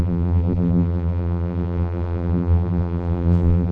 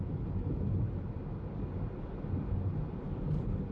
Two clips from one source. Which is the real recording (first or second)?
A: second